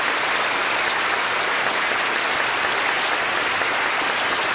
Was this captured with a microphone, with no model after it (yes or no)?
yes